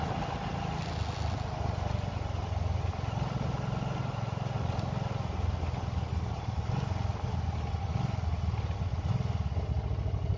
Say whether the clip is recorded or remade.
recorded